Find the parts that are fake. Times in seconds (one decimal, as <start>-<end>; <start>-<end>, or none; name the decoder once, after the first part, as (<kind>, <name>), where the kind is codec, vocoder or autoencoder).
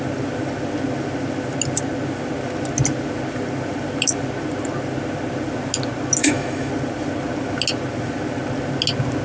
6.2-6.7 (autoencoder, DAC-VAE)